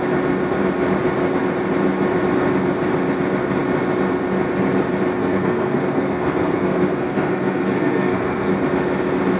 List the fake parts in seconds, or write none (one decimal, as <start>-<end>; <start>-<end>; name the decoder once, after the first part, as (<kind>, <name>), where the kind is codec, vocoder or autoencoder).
5.2-8.5 (codec, SNAC)